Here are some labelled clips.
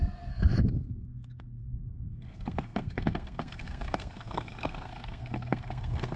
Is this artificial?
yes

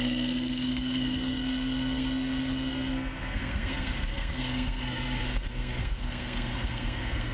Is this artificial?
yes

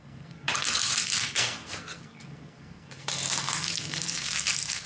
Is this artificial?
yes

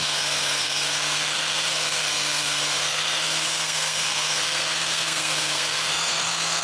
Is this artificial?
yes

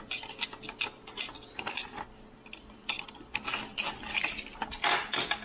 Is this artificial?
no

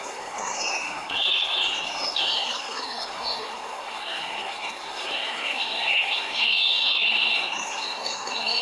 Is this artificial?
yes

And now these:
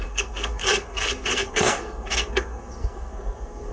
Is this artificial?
yes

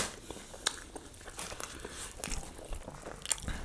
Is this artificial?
no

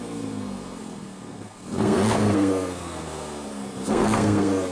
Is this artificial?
yes